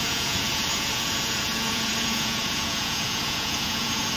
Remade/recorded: remade